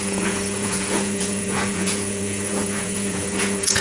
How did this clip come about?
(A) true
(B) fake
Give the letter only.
B